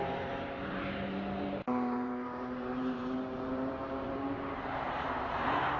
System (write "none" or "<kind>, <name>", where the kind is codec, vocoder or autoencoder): vocoder, BigVGAN v2